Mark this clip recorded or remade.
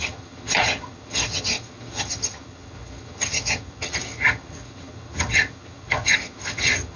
remade